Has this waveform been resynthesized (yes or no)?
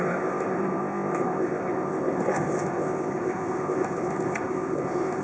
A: yes